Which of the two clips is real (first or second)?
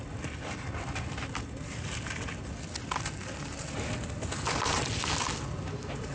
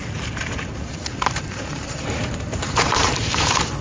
first